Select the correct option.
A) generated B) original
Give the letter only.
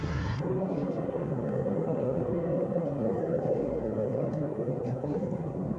A